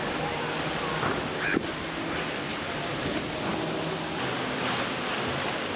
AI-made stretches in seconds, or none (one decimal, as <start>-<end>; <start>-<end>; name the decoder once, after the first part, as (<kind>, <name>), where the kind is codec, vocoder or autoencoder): none